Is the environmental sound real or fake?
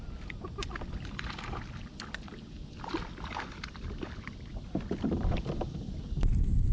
real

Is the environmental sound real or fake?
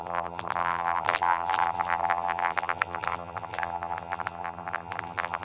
fake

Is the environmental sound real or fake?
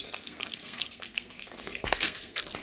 fake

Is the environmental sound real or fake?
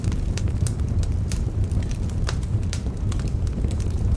fake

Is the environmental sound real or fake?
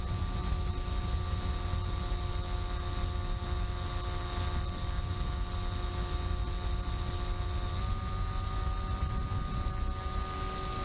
real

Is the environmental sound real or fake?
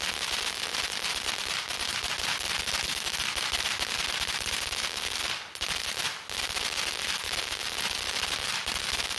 real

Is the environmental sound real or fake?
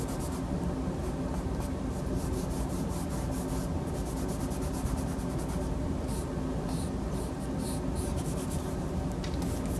real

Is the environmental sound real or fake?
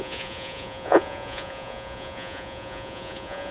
fake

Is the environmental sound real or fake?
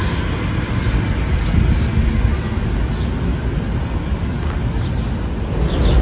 real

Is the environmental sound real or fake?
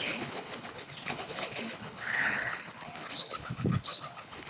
fake